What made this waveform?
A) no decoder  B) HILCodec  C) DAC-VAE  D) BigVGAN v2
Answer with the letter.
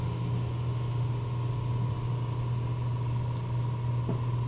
A